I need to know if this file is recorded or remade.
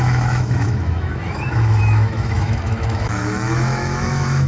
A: remade